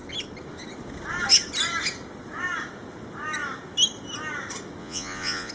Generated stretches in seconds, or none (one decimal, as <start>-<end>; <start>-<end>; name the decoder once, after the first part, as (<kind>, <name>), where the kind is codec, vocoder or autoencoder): 4.8-5.5 (vocoder, Vocos)